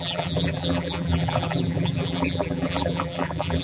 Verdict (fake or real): fake